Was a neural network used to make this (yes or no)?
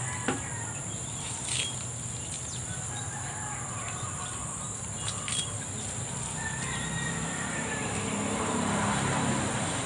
no